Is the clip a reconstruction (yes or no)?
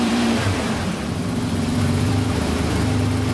yes